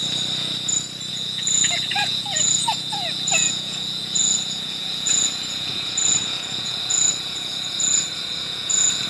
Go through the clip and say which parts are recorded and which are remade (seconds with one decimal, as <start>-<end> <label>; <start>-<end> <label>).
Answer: 0.0-1.1 recorded; 1.1-9.1 remade